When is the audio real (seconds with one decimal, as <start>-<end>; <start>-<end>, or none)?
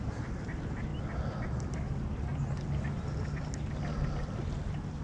0.0-5.0